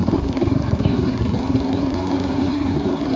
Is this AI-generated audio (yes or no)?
yes